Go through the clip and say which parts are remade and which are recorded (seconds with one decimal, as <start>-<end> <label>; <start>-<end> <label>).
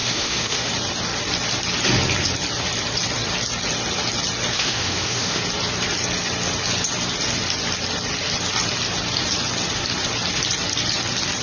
0.0-0.7 remade; 0.7-4.5 recorded; 4.5-5.4 remade; 5.4-11.4 recorded